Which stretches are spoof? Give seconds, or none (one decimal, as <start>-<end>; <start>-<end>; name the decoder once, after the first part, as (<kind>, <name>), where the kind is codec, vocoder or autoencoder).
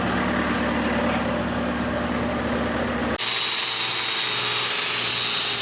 none